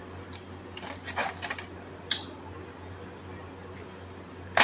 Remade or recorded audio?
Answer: recorded